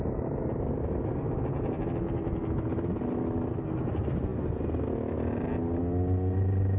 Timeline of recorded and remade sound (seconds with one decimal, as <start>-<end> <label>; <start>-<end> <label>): 0.0-6.8 recorded